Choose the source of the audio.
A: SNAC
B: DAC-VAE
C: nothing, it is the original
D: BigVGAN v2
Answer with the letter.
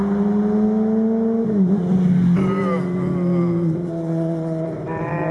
C